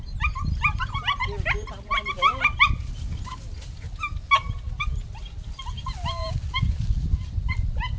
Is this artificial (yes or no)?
no